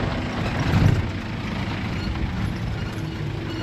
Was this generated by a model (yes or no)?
no